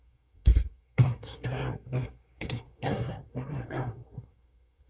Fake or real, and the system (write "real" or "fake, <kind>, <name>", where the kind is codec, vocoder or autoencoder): fake, codec, SNAC